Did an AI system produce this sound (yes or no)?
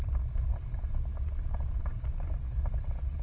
no